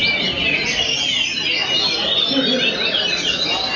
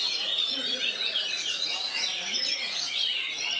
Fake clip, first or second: second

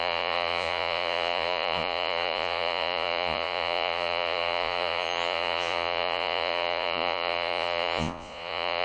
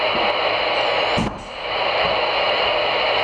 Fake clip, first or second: first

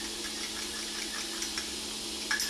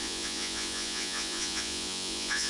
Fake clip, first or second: second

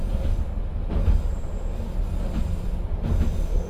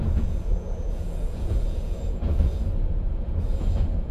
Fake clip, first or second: second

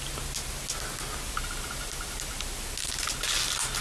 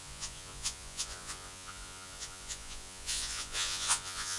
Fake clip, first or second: second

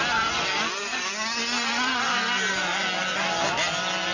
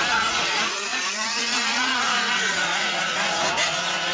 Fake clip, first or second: second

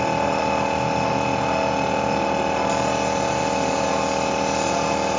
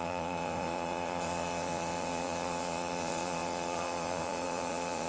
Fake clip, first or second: second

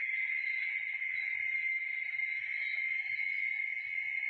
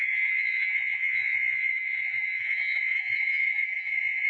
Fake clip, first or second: second